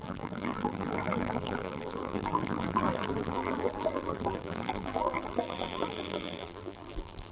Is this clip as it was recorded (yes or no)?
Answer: no